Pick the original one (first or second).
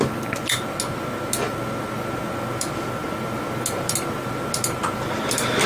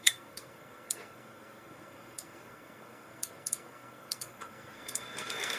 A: first